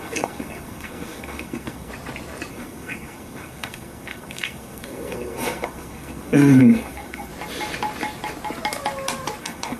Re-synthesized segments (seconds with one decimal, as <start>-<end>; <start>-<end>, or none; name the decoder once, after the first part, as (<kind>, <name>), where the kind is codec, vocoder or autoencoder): 0.0-1.9 (codec, SNAC); 2.5-7.3; 9.4-9.8